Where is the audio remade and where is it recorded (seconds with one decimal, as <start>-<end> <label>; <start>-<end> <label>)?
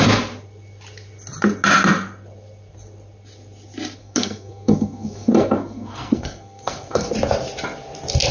0.0-4.0 recorded; 4.0-7.1 remade; 7.1-8.3 recorded